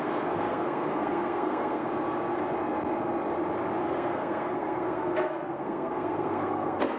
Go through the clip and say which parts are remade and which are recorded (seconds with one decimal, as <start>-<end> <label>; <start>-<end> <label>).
0.0-1.9 remade; 1.9-3.8 recorded; 3.8-7.0 remade